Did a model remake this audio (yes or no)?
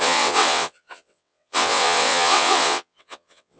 yes